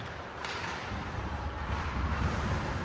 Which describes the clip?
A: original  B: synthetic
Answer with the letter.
B